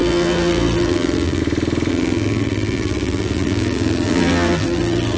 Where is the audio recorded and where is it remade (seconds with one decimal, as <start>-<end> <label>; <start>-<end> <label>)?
0.0-1.4 remade; 1.4-1.9 recorded; 1.9-5.2 remade